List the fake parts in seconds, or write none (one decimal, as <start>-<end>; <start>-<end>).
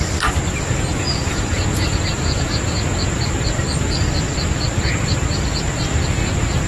0.9-3.1